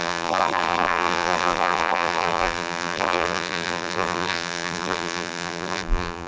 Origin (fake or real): fake